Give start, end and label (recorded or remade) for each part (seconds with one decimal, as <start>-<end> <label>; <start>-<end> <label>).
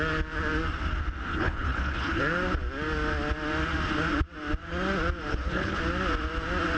0.0-1.3 recorded; 1.3-2.2 remade; 2.2-5.3 recorded; 5.3-5.8 remade; 5.8-6.8 recorded